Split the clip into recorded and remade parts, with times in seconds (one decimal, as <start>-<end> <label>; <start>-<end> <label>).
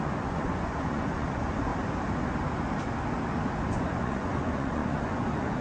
0.0-1.7 remade; 1.7-3.7 recorded; 3.7-5.6 remade